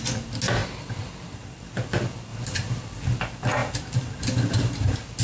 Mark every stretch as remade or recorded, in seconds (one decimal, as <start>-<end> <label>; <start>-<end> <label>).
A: 0.0-5.2 recorded